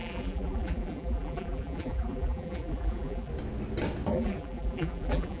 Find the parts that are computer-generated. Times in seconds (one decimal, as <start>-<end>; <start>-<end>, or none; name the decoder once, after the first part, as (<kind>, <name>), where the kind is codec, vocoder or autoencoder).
0.0-3.3 (vocoder, BigVGAN v2); 4.1-5.4

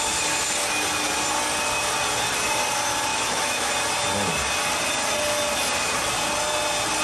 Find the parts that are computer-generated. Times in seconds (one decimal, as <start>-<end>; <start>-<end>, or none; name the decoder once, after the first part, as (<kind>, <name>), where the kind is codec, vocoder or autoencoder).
3.1-3.7 (autoencoder, DAC-VAE)

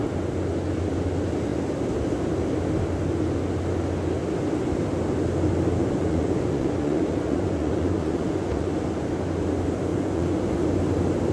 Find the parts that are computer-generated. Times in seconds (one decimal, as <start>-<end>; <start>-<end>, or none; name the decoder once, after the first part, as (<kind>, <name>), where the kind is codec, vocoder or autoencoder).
5.8-8.7 (vocoder, Vocos); 9.9-10.8

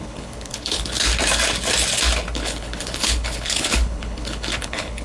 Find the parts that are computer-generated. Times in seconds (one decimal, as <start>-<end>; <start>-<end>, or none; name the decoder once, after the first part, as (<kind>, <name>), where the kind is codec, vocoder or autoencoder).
0.0-1.1 (codec, HILCodec); 2.3-5.0